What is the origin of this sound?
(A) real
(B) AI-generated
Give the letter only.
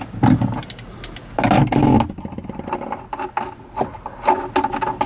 A